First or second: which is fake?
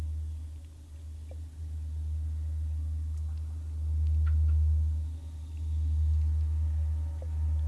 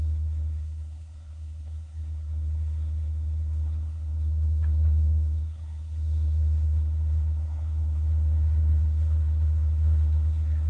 second